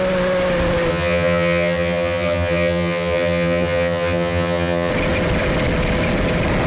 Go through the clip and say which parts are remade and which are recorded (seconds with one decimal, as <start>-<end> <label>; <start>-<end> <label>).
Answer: 0.0-0.9 recorded; 0.9-4.9 remade; 4.9-6.7 recorded